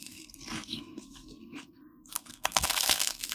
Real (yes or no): no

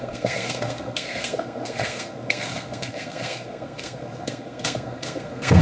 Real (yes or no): no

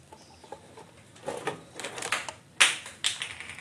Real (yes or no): yes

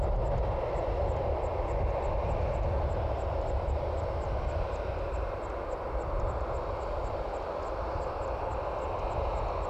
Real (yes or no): yes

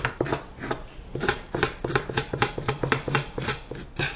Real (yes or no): no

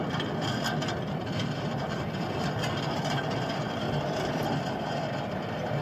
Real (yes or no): no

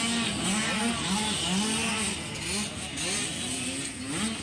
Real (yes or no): yes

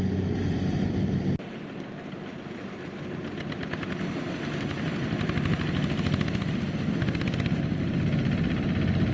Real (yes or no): yes